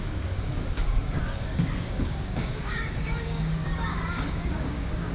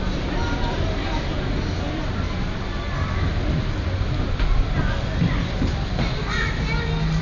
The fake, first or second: first